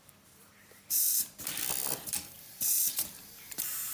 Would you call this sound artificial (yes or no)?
yes